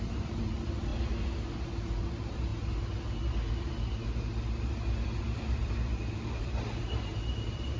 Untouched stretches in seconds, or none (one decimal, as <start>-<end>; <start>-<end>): 0.9-1.6; 2.5-3.5